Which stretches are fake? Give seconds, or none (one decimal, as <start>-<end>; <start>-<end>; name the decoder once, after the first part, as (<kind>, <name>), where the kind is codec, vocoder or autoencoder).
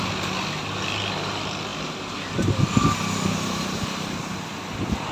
none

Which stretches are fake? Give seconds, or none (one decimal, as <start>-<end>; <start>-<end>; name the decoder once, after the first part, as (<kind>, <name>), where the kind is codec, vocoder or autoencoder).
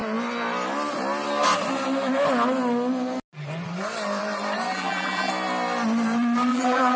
4.7-5.3 (vocoder, BigVGAN v2); 6.5-7.0